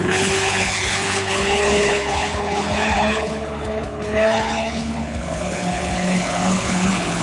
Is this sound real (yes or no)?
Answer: no